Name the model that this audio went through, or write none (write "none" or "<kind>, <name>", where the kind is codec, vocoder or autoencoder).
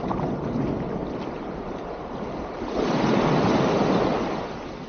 none